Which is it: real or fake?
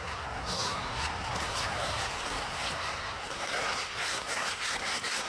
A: fake